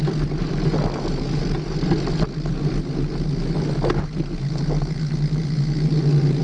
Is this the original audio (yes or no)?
yes